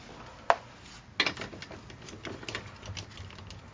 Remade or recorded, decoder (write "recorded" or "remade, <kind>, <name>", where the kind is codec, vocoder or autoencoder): recorded